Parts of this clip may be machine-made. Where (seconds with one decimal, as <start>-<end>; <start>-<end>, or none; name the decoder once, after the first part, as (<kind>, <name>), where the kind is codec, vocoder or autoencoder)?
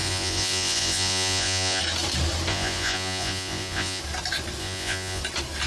0.0-1.8 (vocoder, Vocos); 2.5-4.0; 4.6-5.2